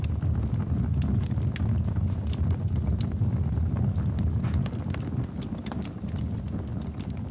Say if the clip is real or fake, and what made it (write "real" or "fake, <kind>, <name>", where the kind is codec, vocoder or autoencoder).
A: real